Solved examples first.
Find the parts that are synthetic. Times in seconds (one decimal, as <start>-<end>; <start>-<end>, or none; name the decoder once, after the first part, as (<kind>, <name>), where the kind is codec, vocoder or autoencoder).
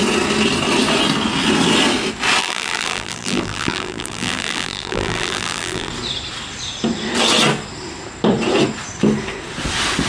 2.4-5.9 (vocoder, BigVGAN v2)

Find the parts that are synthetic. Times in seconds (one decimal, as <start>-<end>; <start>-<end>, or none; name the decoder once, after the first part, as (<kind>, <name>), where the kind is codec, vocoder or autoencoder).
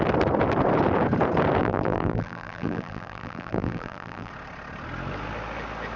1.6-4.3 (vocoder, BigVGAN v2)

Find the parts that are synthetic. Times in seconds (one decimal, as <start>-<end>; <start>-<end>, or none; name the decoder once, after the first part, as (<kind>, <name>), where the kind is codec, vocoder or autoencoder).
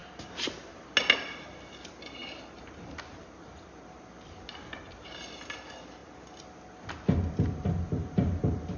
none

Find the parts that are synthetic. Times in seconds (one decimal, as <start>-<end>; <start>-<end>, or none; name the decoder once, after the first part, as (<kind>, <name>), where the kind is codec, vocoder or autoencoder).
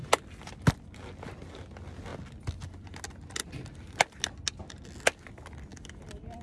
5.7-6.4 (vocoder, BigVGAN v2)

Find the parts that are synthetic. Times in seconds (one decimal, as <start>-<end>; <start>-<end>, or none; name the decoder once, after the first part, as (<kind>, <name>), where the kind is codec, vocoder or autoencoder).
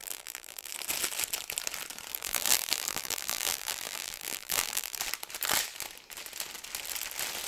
0.0-0.7 (vocoder, BigVGAN v2); 2.1-5.0